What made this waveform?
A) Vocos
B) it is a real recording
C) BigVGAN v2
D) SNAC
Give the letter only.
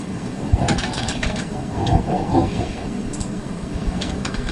D